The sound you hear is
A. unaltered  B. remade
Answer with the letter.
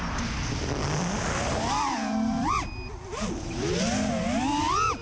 A